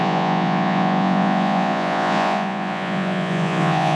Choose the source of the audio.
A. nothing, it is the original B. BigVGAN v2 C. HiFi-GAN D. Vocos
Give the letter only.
D